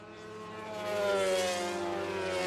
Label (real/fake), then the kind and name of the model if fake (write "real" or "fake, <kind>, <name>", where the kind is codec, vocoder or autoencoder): real